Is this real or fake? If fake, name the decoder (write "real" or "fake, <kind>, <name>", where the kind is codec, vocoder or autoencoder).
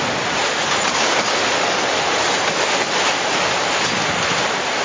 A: real